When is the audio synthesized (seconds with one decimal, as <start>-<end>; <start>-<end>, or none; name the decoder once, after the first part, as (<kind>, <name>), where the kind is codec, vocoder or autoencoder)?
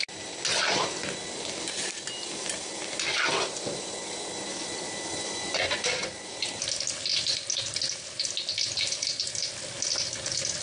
5.1-6.1 (vocoder, Vocos)